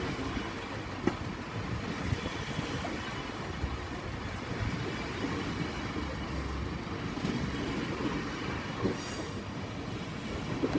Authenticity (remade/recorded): recorded